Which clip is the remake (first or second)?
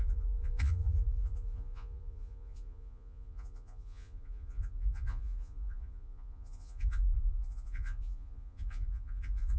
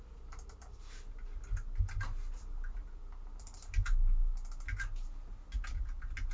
first